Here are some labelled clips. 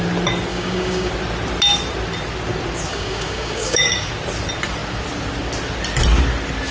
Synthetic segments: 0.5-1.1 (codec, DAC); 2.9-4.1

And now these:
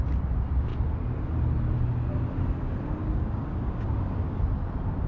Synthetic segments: 3.0-4.4 (codec, DAC)